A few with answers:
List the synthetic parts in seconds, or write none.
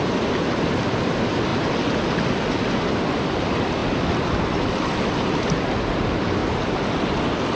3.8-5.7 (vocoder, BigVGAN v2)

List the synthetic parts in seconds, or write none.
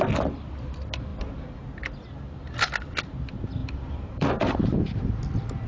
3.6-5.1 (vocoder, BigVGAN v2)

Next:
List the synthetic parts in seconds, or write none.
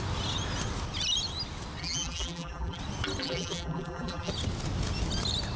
1.8-2.8 (vocoder, BigVGAN v2); 3.2-4.3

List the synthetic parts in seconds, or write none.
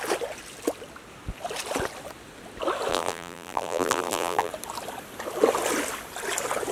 2.9-4.5 (vocoder, BigVGAN v2)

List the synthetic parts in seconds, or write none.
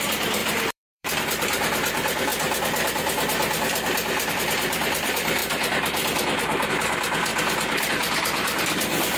0.0-2.3 (vocoder, BigVGAN v2); 4.3-7.3; 7.9-9.2